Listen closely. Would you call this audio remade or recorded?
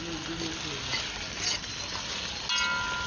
recorded